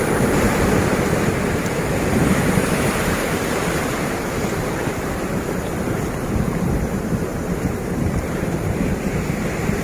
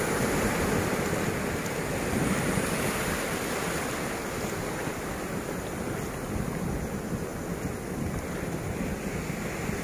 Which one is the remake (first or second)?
first